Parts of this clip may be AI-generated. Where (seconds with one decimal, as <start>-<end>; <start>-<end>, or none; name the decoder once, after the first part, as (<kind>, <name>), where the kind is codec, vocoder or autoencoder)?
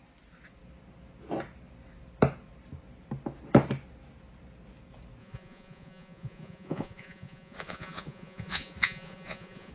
5.2-9.7 (vocoder, Vocos)